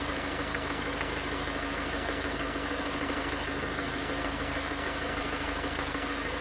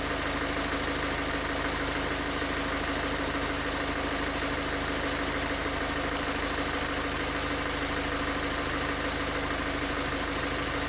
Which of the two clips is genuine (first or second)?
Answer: second